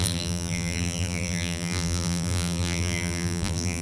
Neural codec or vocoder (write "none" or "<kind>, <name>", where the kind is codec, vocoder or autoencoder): vocoder, BigVGAN v2